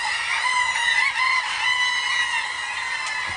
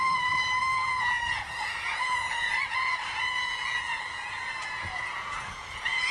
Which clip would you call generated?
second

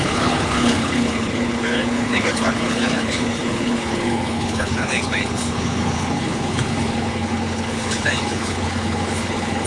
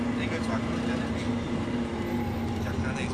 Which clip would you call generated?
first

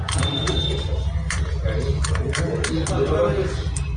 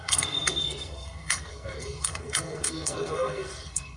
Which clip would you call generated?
second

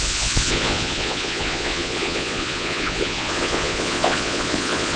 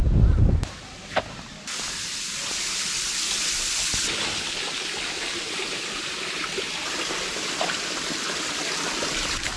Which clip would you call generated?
first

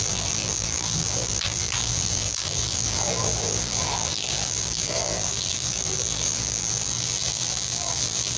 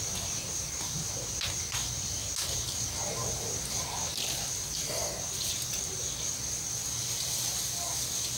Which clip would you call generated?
first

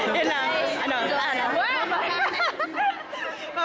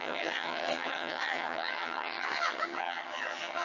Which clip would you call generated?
second